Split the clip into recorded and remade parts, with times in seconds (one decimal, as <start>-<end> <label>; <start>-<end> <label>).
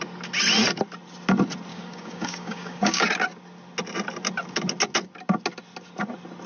0.0-1.7 recorded; 1.7-3.0 remade; 3.0-6.5 recorded